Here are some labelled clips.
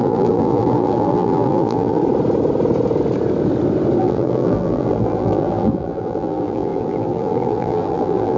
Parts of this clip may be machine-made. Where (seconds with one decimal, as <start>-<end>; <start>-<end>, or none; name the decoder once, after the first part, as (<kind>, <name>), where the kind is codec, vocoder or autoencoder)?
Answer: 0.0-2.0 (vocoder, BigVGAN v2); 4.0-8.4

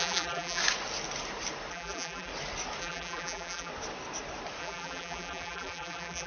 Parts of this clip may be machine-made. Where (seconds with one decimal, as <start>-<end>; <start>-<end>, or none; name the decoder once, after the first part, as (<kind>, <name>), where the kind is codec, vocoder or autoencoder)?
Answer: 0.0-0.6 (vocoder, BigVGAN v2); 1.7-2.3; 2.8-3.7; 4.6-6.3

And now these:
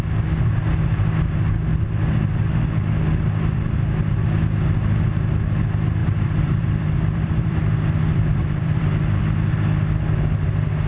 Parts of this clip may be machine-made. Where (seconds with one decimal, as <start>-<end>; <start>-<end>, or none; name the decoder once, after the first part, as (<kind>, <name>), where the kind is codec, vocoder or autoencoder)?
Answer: 6.0-7.6 (vocoder, BigVGAN v2); 8.1-9.2

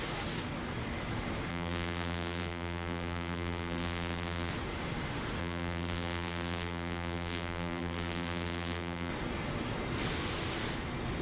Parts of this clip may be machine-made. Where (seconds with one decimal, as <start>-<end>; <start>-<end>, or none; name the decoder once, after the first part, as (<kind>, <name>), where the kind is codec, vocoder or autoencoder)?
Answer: 1.5-4.5 (vocoder, BigVGAN v2); 5.4-9.1

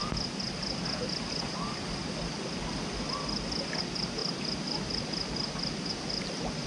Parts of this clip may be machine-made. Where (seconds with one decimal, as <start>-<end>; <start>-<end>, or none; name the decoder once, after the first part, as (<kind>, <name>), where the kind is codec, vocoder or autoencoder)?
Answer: none

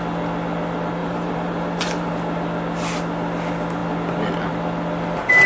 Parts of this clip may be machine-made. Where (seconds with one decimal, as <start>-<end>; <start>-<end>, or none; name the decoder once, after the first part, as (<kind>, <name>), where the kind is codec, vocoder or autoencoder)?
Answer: 1.0-2.1 (vocoder, BigVGAN v2)

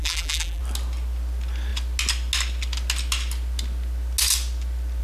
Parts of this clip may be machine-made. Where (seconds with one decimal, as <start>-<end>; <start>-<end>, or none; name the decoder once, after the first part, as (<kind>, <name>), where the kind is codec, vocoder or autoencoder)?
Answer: 0.0-0.6 (vocoder, BigVGAN v2)

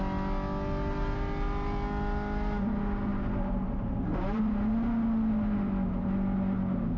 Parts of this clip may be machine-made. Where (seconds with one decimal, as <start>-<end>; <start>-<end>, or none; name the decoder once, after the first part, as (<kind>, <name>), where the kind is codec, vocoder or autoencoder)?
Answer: 3.1-4.4 (vocoder, BigVGAN v2)